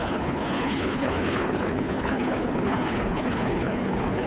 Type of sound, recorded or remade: remade